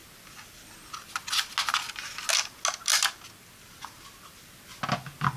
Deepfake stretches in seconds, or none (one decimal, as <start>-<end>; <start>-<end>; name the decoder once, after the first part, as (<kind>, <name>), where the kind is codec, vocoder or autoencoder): none